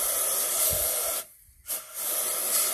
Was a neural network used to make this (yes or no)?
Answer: no